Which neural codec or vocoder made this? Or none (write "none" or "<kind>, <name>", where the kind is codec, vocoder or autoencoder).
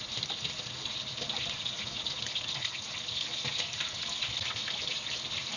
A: none